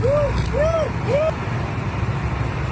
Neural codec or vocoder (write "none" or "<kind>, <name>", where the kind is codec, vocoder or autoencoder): none